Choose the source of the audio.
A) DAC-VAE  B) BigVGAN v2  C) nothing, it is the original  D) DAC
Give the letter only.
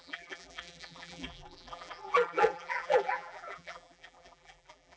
B